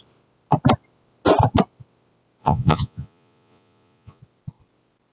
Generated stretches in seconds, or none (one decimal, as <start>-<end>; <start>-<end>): 2.4-4.2